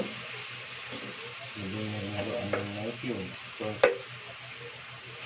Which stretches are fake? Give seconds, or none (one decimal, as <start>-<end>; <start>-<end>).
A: none